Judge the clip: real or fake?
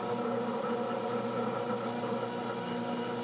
real